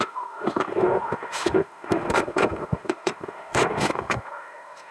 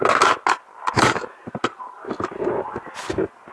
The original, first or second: second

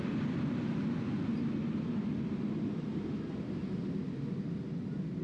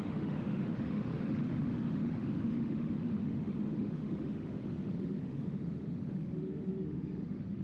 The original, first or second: first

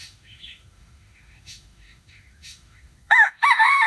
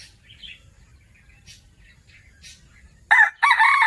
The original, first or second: second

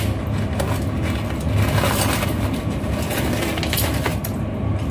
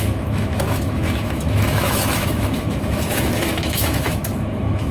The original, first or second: first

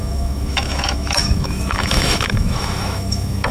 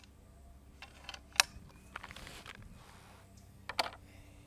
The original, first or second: second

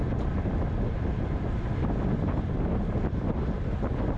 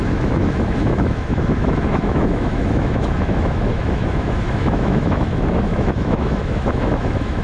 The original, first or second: first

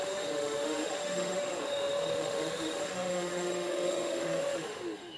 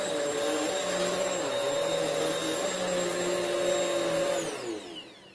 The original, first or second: second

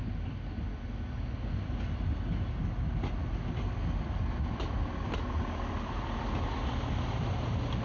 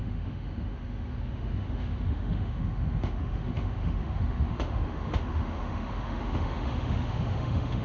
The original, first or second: first